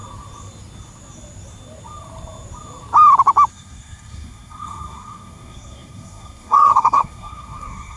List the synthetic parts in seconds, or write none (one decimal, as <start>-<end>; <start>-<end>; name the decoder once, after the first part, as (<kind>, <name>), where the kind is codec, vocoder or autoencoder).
3.5-8.0 (codec, SNAC)